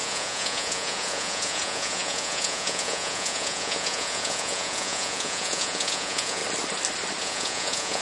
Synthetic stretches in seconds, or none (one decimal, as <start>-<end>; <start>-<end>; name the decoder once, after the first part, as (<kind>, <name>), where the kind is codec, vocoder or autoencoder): 0.0-6.4 (vocoder, Vocos); 7.2-8.0